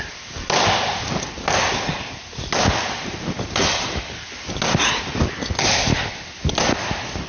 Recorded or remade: recorded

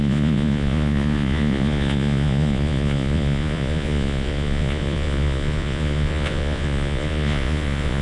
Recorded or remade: remade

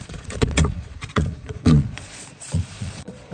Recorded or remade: remade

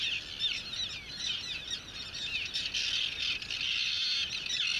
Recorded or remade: recorded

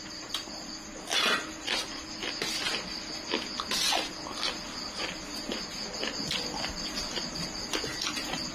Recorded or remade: recorded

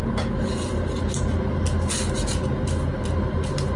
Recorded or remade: recorded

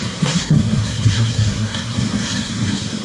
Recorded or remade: remade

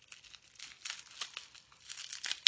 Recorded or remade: recorded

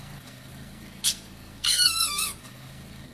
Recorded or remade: remade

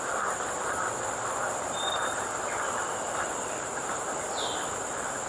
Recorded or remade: recorded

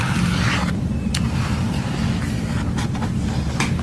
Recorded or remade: recorded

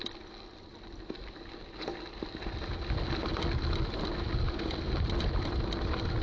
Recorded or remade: recorded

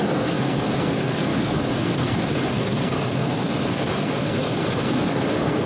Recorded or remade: remade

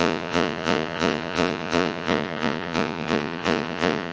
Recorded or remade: remade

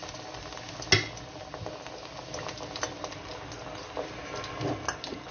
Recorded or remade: recorded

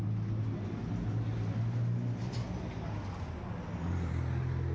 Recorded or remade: recorded